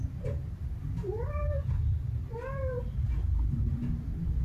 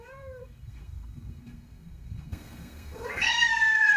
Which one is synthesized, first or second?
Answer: second